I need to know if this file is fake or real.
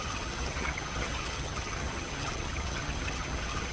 fake